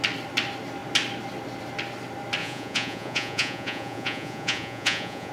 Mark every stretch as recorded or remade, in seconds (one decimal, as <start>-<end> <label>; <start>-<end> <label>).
0.0-2.4 recorded; 2.4-5.3 remade